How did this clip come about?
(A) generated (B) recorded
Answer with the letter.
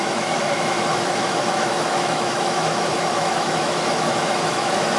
A